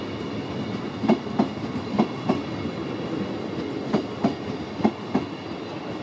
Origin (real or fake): real